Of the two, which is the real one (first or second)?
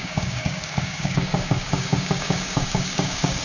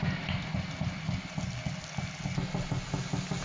second